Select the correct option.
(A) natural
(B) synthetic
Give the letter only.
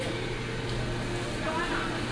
A